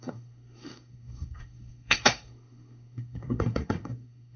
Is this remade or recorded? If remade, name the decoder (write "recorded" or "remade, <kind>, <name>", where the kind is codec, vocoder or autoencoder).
remade, codec, SNAC